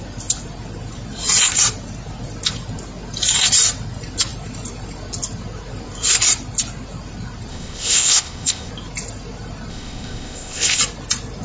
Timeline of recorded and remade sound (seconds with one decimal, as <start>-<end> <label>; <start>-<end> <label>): 0.0-7.5 recorded; 7.5-8.7 remade; 8.7-9.7 recorded; 9.7-10.8 remade; 10.8-11.4 recorded

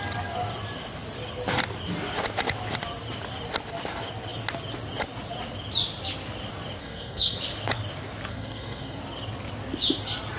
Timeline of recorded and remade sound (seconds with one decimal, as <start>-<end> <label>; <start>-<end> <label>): 0.0-6.8 recorded; 6.8-7.4 remade; 7.4-8.3 recorded; 8.3-9.0 remade; 9.0-10.4 recorded